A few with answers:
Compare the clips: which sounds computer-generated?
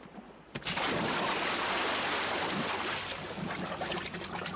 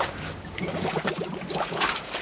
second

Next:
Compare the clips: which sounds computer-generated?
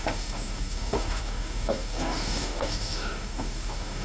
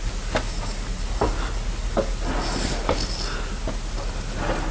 first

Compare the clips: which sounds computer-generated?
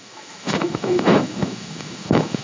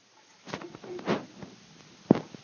first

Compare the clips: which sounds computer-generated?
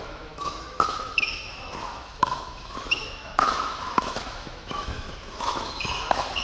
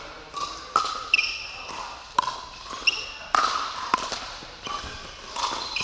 first